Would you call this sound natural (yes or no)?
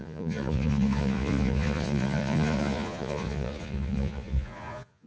no